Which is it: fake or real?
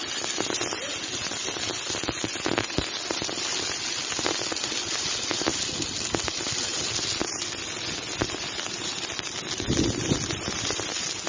real